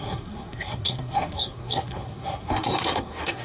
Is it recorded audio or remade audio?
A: remade